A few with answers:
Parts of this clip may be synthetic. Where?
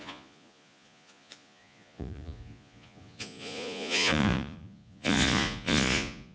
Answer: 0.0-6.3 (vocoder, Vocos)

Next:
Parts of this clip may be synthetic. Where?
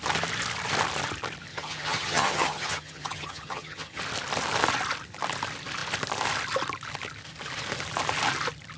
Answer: 1.5-4.0 (vocoder, HiFi-GAN)